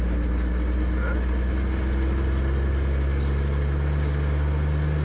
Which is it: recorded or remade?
recorded